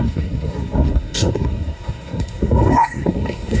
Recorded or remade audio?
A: remade